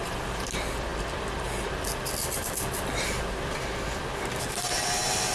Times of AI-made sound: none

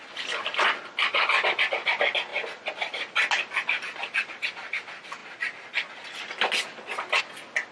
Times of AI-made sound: none